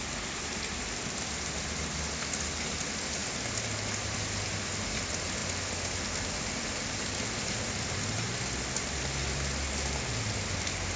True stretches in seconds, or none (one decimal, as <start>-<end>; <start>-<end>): 0.0-11.0